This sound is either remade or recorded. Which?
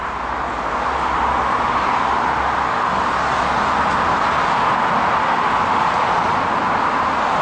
recorded